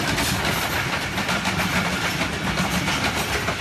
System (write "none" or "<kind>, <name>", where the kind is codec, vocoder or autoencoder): none